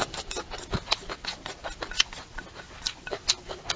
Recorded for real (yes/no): yes